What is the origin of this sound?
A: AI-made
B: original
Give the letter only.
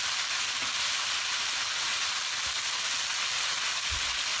B